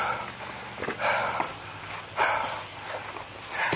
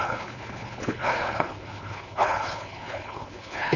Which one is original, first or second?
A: first